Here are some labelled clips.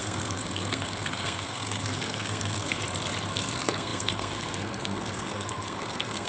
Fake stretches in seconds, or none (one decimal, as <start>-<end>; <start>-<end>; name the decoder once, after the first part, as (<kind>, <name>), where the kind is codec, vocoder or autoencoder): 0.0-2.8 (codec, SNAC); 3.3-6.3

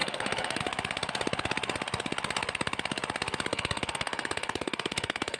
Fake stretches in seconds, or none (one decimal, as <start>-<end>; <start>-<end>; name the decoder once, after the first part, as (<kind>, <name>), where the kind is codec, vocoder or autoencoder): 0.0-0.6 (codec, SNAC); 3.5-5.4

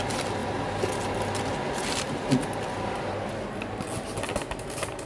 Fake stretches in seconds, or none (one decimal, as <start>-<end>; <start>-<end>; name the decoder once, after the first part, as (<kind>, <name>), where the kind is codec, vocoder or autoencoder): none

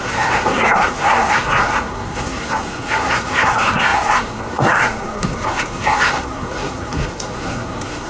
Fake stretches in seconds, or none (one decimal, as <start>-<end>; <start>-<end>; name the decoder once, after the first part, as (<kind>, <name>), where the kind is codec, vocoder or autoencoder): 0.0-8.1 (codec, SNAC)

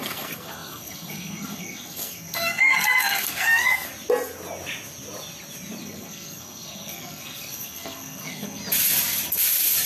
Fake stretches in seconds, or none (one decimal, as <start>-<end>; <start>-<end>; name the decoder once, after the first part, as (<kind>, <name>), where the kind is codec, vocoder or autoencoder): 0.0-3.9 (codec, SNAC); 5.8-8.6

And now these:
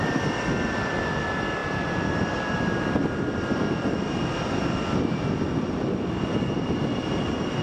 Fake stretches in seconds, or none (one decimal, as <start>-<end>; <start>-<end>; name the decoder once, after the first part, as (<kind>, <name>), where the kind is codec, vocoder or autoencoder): none